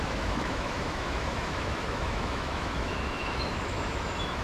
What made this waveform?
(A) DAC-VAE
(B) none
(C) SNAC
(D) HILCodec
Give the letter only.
A